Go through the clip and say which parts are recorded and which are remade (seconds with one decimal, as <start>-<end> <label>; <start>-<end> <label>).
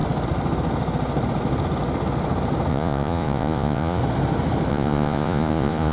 0.0-2.7 recorded; 2.7-4.0 remade; 4.0-4.7 recorded; 4.7-5.9 remade